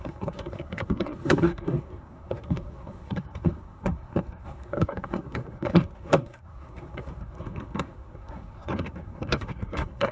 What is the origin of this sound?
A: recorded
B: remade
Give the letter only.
B